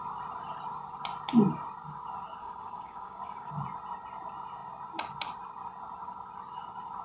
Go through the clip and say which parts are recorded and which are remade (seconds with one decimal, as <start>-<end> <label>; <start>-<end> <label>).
0.0-2.4 recorded; 2.4-3.5 remade; 3.5-7.0 recorded